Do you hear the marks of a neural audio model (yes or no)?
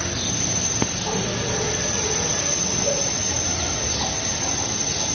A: no